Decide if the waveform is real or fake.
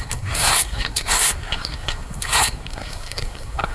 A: fake